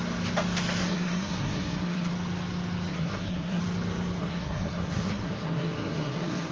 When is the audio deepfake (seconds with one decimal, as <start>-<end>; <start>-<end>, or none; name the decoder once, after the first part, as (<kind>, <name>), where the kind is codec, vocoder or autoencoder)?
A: 0.8-2.1 (codec, SNAC); 2.9-3.6; 4.2-6.5